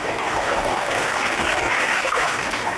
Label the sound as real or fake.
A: fake